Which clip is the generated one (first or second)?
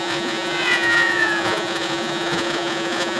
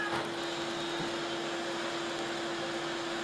first